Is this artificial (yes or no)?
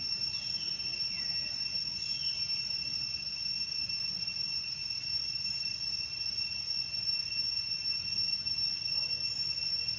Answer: no